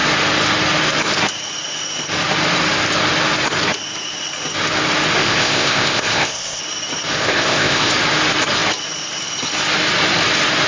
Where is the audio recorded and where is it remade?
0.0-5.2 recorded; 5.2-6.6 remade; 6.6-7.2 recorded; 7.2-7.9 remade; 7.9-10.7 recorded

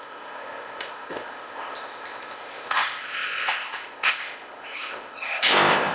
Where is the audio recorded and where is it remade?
0.0-5.9 remade

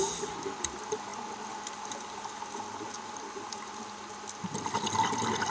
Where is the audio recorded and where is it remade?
0.0-5.5 recorded

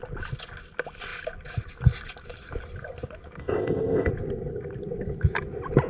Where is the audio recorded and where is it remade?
0.0-3.4 recorded; 3.4-4.1 remade; 4.1-5.9 recorded